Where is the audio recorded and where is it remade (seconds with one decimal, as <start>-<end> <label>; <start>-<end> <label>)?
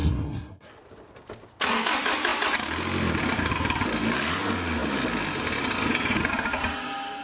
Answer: 0.0-0.7 remade; 0.7-7.2 recorded